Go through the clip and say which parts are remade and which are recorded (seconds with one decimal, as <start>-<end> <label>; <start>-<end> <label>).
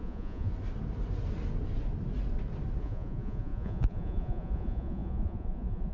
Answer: 0.0-0.5 remade; 0.5-2.8 recorded; 2.8-5.9 remade